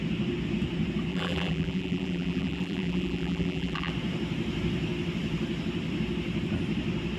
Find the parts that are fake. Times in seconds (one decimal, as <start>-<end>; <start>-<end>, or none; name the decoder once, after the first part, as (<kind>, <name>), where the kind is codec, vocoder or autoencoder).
1.1-3.9 (vocoder, BigVGAN v2)